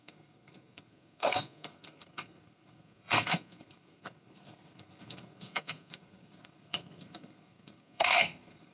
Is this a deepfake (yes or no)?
yes